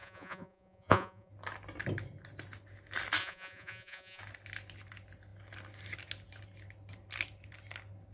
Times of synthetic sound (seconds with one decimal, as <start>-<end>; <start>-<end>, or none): 0.0-1.3; 3.2-4.2